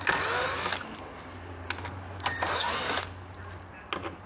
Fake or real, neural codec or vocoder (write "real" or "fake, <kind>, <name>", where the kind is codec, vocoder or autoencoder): real